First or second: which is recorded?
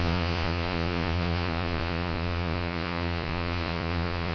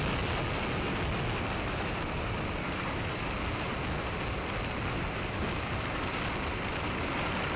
second